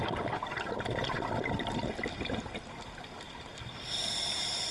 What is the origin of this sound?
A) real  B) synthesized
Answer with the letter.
A